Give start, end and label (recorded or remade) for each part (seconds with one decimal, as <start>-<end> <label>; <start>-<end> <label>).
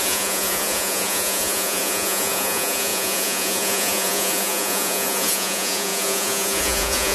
0.0-7.1 remade